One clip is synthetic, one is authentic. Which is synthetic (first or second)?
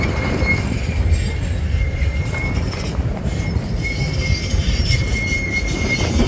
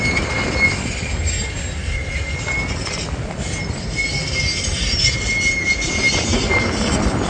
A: first